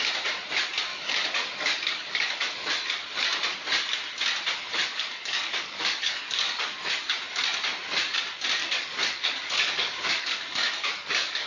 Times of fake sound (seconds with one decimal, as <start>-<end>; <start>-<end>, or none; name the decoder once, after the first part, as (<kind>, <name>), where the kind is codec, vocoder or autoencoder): 0.9-2.7 (codec, DAC); 4.7-6.9; 8.6-11.5